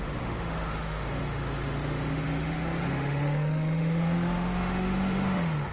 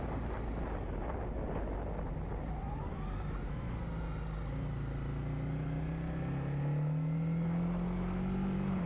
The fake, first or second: first